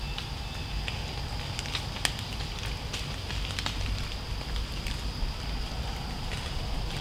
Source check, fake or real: real